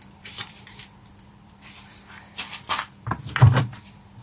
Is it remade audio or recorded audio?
remade